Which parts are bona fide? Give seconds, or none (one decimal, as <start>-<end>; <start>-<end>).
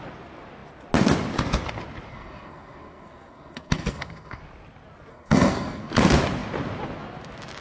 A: 0.0-2.1; 4.4-5.1; 5.9-7.6